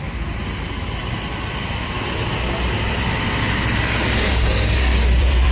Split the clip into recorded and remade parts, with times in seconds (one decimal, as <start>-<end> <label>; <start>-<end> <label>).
0.0-4.9 recorded; 4.9-5.5 remade